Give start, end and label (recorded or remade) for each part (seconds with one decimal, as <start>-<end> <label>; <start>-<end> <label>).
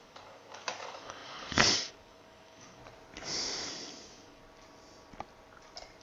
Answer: 0.0-2.8 remade; 2.8-3.7 recorded; 3.7-4.4 remade; 4.4-6.0 recorded